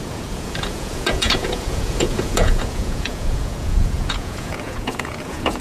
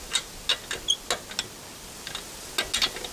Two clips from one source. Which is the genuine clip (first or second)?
second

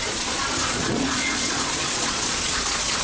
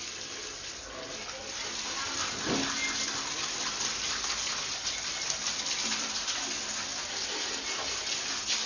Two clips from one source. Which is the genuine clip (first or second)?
second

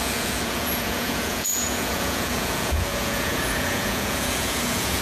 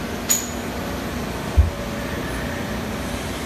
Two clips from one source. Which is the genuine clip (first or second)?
second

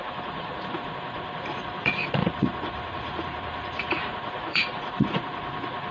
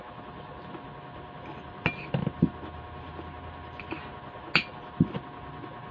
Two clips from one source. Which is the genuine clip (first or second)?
second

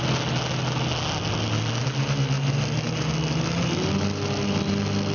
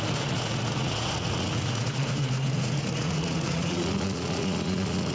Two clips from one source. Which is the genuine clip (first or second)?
first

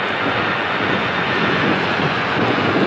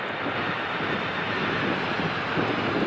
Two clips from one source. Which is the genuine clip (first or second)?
second